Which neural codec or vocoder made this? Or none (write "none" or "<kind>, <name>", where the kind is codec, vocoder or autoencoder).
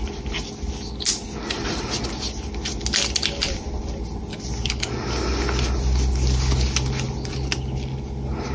none